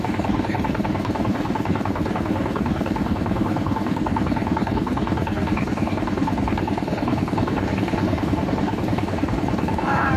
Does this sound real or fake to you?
fake